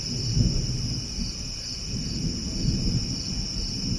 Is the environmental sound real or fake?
real